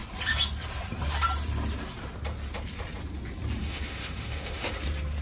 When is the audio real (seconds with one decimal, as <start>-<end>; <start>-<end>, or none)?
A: 0.0-3.6; 4.7-5.2